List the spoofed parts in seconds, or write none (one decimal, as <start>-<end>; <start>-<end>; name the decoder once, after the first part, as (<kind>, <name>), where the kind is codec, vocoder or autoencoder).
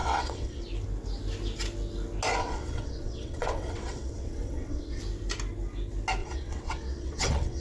0.0-0.6 (vocoder, WaveNeXt); 2.4-5.0; 6.2-7.6